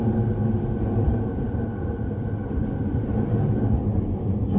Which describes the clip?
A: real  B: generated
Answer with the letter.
A